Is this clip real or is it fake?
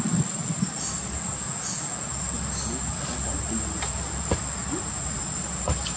real